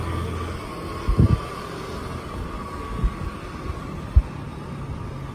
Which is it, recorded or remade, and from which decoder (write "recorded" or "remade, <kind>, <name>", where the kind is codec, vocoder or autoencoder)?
recorded